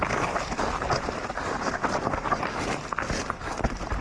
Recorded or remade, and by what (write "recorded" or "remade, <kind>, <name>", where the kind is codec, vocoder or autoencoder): recorded